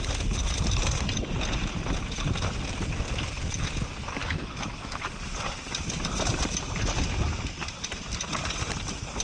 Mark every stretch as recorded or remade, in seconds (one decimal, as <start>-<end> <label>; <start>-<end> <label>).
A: 0.0-4.2 recorded; 4.2-5.0 remade; 5.0-9.2 recorded

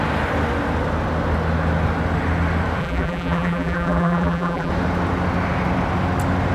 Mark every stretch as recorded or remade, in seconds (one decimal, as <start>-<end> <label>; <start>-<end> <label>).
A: 0.0-2.8 recorded; 2.8-4.7 remade; 4.7-6.5 recorded

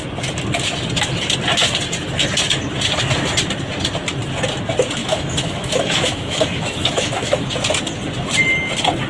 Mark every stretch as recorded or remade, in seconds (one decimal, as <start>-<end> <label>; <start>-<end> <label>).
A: 0.0-5.0 recorded; 5.0-7.5 remade; 7.5-9.1 recorded

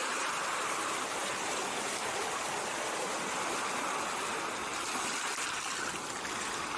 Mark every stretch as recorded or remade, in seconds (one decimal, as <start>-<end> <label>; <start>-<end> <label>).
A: 0.0-6.8 recorded

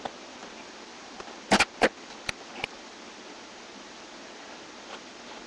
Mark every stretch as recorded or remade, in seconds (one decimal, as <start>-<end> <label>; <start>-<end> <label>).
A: 0.0-5.5 recorded

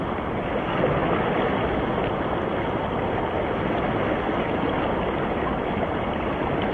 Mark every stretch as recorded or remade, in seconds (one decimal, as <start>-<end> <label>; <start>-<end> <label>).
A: 0.0-6.7 recorded